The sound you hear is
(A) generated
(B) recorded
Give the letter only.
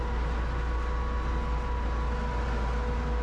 B